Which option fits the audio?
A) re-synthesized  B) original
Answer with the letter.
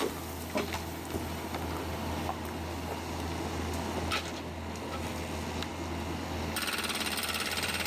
B